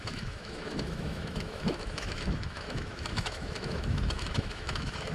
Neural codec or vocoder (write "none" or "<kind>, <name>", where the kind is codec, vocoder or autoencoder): autoencoder, DAC-VAE